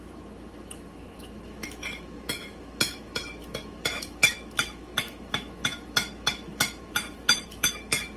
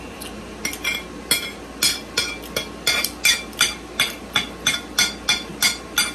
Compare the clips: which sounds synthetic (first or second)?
first